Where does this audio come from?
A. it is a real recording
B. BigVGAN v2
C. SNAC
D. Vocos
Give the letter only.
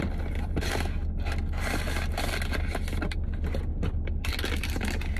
A